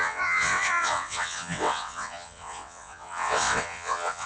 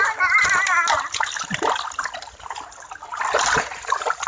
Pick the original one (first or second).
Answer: second